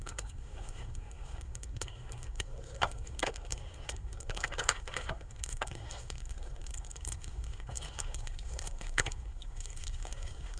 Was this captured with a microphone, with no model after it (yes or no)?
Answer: no